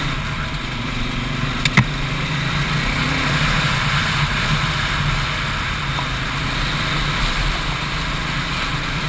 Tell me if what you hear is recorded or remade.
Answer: recorded